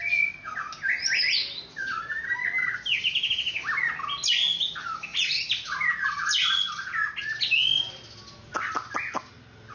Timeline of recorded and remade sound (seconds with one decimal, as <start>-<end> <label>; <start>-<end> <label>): 0.0-9.7 recorded